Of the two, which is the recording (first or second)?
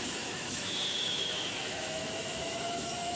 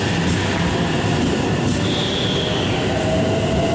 second